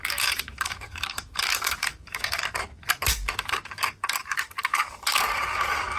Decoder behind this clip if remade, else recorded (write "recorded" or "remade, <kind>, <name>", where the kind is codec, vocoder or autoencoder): remade, codec, DAC